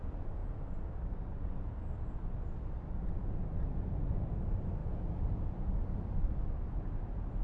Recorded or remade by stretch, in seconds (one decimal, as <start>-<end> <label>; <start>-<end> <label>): 0.0-7.4 recorded